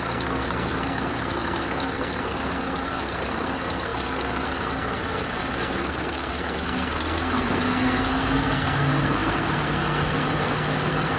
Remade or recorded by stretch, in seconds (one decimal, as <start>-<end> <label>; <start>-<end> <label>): 0.0-11.2 remade